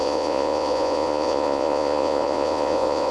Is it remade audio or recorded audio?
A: remade